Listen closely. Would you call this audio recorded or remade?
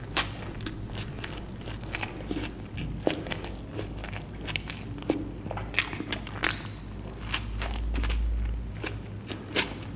recorded